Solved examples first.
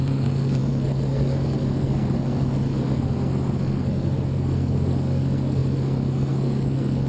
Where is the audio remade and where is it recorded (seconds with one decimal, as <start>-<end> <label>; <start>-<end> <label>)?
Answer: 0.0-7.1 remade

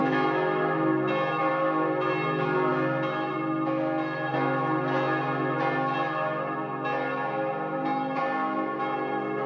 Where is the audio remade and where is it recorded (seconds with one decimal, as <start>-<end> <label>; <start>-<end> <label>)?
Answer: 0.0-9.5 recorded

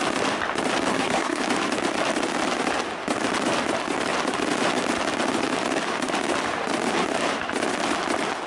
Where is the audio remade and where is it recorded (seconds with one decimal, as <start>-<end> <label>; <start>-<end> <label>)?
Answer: 0.0-0.9 recorded; 0.9-1.4 remade; 1.4-8.5 recorded